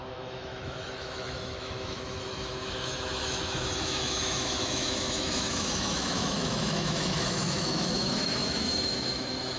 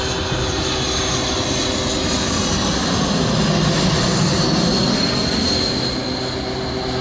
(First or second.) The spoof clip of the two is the first